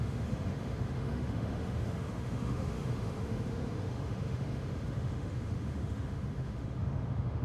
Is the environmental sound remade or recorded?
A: remade